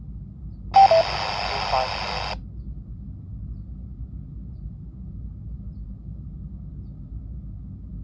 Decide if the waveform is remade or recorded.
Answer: recorded